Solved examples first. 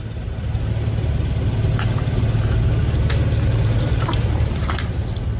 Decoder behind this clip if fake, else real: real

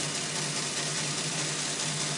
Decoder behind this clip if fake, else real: real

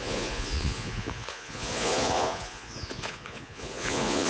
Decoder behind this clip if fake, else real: fake, vocoder, Vocos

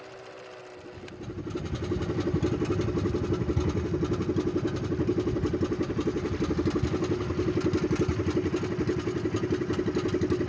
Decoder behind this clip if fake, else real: real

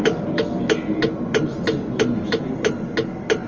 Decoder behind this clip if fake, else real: real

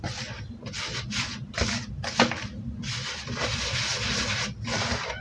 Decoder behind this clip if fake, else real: real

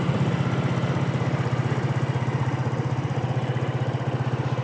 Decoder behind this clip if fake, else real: real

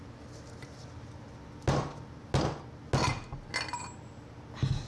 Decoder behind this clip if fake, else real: real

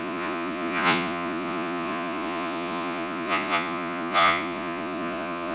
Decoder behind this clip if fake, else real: fake, vocoder, Vocos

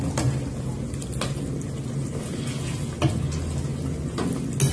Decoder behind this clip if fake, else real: real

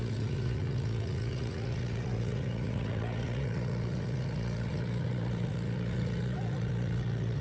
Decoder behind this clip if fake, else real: fake, vocoder, Vocos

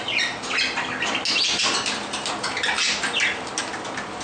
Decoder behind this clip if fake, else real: real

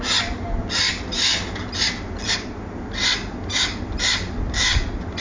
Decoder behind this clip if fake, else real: real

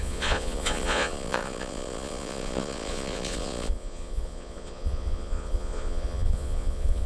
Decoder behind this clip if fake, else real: fake, vocoder, Vocos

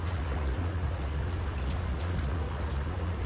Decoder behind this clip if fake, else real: fake, vocoder, Vocos